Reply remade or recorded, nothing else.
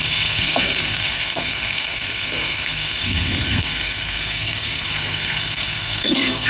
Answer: remade